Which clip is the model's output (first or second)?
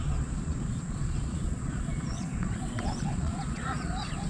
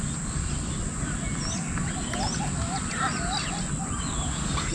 first